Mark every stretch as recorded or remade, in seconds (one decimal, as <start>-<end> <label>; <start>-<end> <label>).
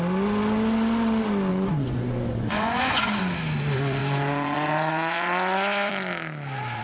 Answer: 0.0-1.5 recorded; 1.5-3.2 remade; 3.2-4.0 recorded; 4.0-5.9 remade; 5.9-6.8 recorded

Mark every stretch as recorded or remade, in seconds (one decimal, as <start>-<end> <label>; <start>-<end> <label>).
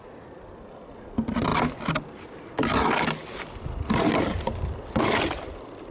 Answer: 0.0-5.9 recorded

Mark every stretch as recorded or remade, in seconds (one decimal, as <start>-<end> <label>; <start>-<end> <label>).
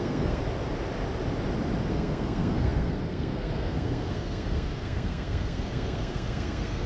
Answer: 0.0-0.4 remade; 0.4-1.9 recorded; 1.9-6.9 remade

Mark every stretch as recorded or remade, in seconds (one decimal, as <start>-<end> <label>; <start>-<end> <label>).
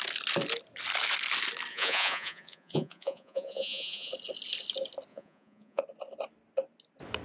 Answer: 0.0-1.7 recorded; 1.7-4.1 remade; 4.1-5.1 recorded; 5.1-5.8 remade; 5.8-7.2 recorded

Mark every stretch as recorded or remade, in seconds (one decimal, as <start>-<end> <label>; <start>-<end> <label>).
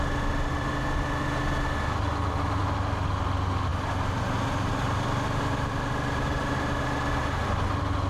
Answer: 0.0-8.1 recorded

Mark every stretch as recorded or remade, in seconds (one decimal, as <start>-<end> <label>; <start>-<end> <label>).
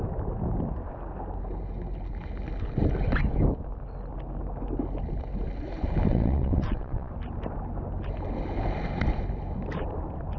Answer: 0.0-6.1 recorded; 6.1-7.1 remade; 7.1-10.4 recorded